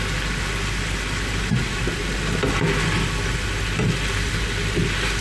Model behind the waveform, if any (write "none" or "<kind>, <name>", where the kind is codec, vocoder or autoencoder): none